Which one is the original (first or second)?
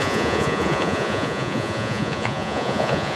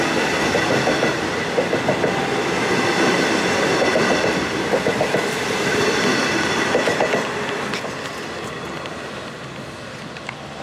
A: second